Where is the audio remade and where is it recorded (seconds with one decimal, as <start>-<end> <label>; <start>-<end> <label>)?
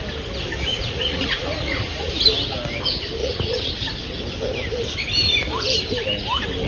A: 0.0-0.7 recorded; 0.7-2.1 remade; 2.1-3.2 recorded; 3.2-3.7 remade; 3.7-6.7 recorded